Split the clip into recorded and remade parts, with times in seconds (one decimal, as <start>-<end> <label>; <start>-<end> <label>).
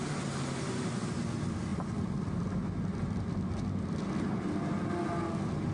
0.0-5.7 recorded